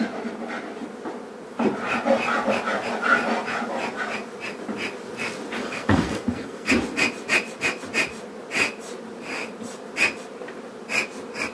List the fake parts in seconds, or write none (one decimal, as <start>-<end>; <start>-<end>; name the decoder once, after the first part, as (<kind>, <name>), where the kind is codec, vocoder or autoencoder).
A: 5.6-6.7 (codec, SNAC)